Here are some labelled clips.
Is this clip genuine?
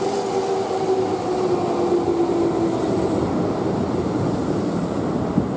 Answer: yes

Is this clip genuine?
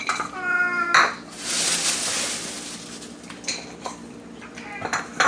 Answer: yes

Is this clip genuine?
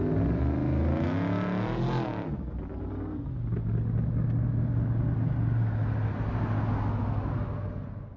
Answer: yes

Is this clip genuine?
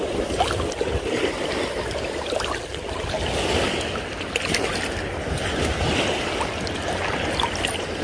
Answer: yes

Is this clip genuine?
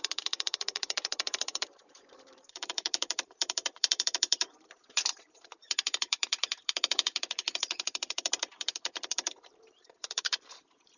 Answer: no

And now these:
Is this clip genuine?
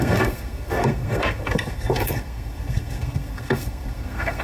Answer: no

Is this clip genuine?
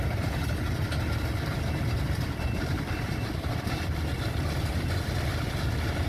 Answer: yes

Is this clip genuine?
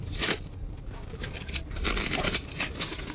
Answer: yes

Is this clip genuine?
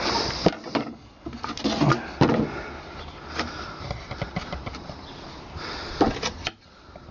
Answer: yes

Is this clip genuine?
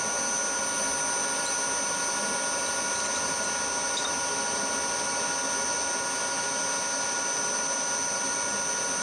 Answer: yes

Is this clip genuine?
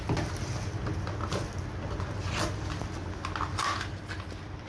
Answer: yes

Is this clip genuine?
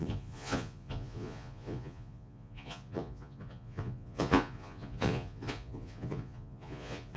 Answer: no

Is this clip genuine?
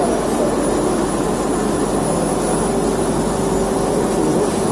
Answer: yes